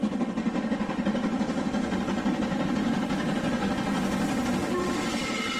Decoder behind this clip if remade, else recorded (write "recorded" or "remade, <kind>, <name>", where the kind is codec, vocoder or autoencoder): recorded